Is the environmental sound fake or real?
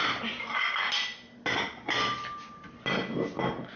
real